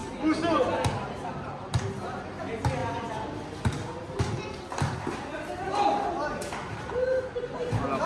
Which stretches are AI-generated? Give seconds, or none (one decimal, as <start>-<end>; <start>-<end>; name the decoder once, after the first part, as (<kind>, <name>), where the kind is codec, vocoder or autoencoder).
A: none